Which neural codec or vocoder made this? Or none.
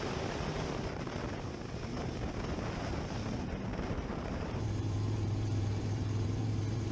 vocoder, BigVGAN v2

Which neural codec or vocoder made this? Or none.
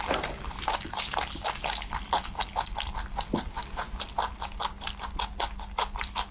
none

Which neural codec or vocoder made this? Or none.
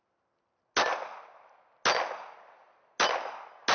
none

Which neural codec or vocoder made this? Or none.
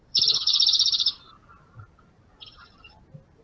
vocoder, BigVGAN v2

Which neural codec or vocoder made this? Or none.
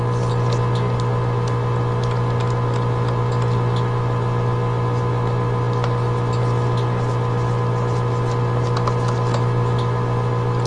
none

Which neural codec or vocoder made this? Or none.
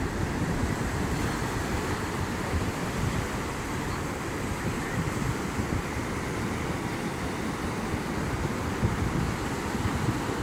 none